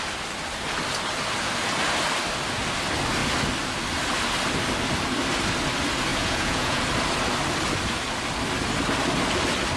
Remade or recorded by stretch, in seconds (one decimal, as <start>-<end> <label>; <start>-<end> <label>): 0.0-6.1 recorded; 6.1-6.8 remade; 6.8-9.8 recorded